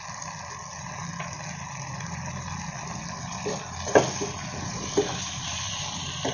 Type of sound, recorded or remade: recorded